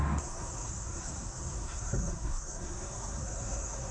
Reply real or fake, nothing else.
fake